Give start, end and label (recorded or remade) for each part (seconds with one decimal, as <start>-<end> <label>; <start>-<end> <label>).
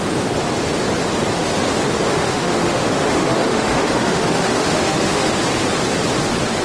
0.0-2.1 recorded; 2.1-5.3 remade; 5.3-6.6 recorded